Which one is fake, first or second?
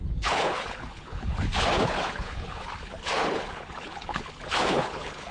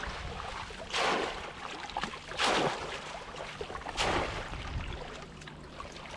first